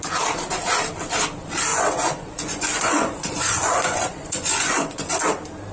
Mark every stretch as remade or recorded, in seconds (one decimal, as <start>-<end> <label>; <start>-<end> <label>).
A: 0.0-1.7 recorded; 1.7-5.1 remade; 5.1-5.7 recorded